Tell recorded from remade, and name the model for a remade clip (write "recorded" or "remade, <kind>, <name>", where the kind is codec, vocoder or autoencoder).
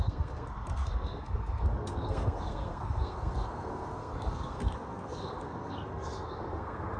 remade, codec, SNAC